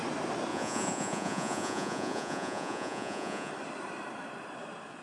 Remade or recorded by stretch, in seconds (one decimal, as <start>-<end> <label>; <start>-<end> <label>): 0.0-0.5 recorded; 0.5-3.5 remade; 3.5-5.0 recorded